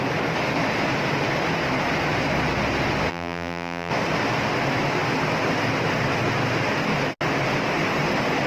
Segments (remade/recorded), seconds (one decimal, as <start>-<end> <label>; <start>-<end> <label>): 0.0-3.1 recorded; 3.1-3.9 remade; 3.9-8.5 recorded